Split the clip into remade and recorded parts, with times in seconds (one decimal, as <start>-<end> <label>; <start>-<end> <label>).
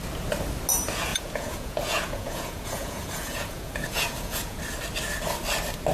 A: 0.0-1.1 recorded; 1.1-4.6 remade; 4.6-5.9 recorded